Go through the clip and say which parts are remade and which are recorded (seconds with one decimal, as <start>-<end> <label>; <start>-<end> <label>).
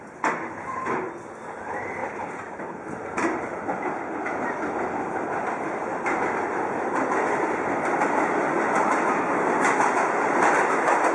0.0-2.0 recorded; 2.0-3.5 remade; 3.5-8.5 recorded; 8.5-9.2 remade; 9.2-11.1 recorded